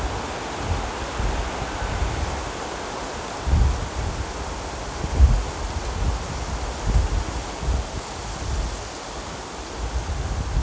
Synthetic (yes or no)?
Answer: no